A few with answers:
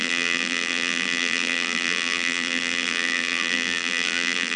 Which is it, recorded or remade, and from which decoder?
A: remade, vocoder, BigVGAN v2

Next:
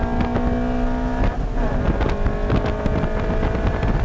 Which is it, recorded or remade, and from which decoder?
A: recorded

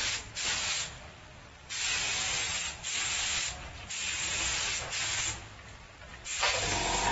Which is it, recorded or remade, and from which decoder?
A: recorded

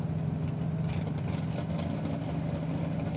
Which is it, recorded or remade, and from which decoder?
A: recorded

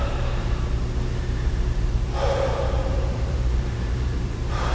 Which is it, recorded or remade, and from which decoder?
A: remade, vocoder, BigVGAN v2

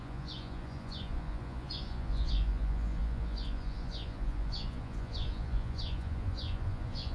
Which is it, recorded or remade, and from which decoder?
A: remade, vocoder, Vocos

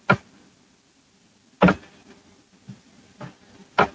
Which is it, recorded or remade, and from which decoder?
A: recorded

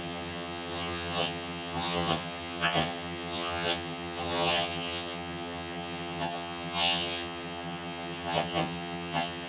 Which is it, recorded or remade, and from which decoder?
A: remade, vocoder, HiFi-GAN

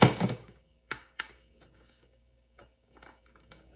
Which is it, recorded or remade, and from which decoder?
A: remade, codec, DAC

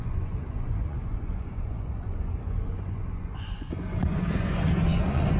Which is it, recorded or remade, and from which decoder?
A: remade, vocoder, Vocos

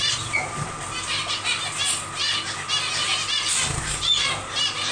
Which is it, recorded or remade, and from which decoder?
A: recorded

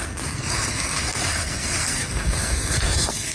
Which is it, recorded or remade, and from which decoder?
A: remade, codec, SNAC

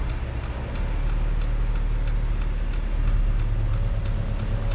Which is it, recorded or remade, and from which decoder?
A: recorded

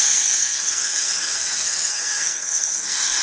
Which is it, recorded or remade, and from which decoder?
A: remade, codec, SNAC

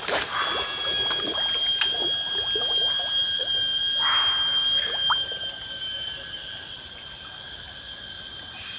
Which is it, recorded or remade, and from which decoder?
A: recorded